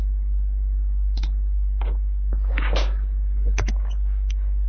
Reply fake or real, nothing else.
fake